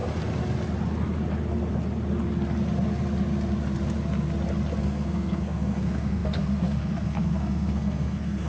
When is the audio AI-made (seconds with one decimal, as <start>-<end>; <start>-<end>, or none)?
4.8-8.5

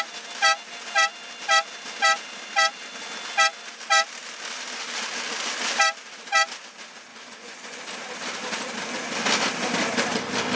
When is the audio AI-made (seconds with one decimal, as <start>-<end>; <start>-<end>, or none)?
7.1-7.8

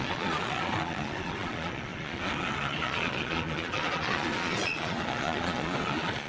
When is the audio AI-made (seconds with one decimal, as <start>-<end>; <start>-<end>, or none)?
0.0-6.3

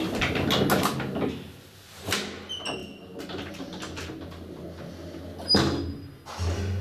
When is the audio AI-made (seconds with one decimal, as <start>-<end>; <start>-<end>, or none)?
none